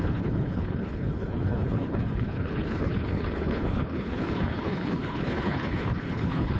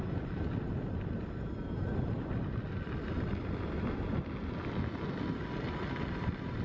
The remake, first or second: first